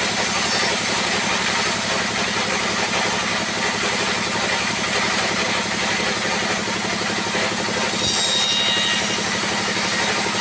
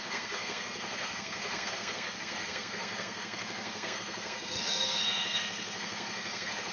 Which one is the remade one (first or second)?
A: second